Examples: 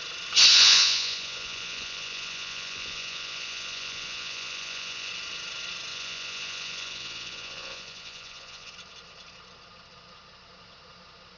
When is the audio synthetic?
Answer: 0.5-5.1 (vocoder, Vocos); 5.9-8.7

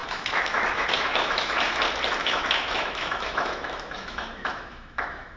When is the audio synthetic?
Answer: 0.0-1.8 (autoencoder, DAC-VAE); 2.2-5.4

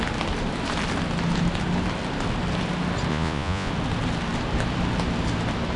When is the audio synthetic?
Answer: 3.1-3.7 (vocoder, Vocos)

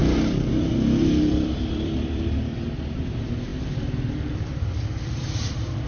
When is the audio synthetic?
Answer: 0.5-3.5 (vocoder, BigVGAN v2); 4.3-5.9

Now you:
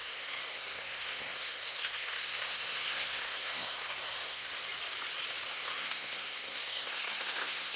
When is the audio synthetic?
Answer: 0.0-4.5 (codec, SNAC); 5.5-7.8

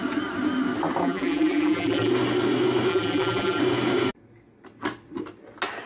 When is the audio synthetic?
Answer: 1.0-2.1 (vocoder, BigVGAN v2); 2.9-3.6

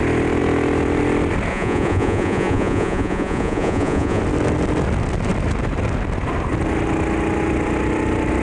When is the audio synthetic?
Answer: 1.5-4.2 (vocoder, Vocos)